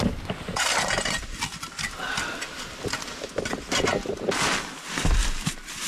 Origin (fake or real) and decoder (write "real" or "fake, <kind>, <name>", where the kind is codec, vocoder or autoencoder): fake, vocoder, BigVGAN v2